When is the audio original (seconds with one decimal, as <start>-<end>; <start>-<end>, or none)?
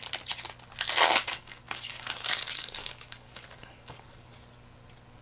0.0-1.2; 4.3-5.2